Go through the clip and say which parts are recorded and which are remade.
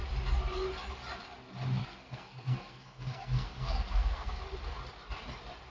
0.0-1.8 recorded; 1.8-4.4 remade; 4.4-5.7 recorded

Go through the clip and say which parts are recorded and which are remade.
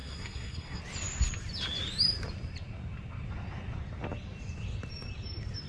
0.0-0.8 remade; 0.8-5.7 recorded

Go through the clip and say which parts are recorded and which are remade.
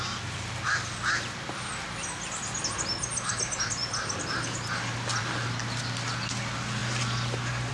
0.0-7.7 recorded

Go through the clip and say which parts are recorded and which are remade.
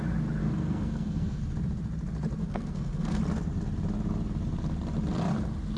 0.0-0.4 recorded; 0.4-1.4 remade; 1.4-2.4 recorded; 2.4-3.2 remade; 3.2-5.8 recorded